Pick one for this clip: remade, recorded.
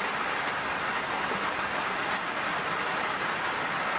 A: recorded